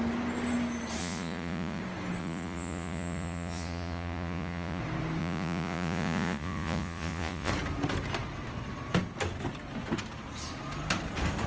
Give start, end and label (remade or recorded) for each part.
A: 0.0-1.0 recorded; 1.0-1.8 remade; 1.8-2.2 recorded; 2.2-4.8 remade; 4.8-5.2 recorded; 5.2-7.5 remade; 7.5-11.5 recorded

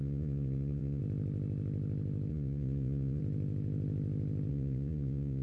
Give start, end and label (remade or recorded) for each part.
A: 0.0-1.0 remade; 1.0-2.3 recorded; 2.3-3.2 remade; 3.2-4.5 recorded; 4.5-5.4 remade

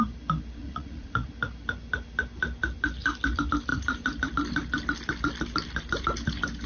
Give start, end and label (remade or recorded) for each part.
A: 0.0-0.6 recorded; 0.6-1.3 remade; 1.3-6.7 recorded